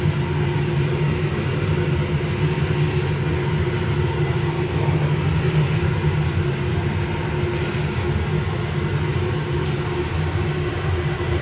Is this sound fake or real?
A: real